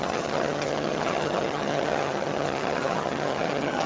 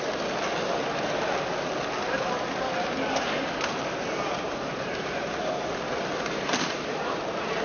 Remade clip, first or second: first